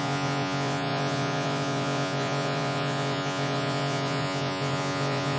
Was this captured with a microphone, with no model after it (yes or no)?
no